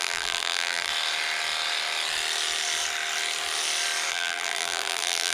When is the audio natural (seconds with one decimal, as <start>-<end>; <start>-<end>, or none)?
0.9-4.1